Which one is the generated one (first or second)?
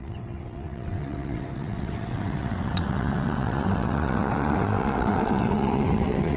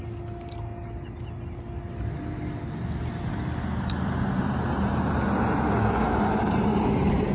first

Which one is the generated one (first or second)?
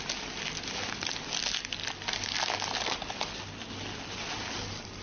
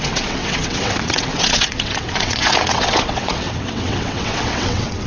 second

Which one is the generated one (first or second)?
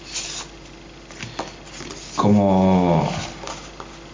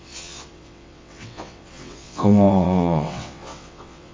second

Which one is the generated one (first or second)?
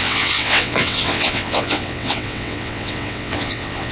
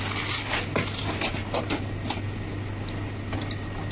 first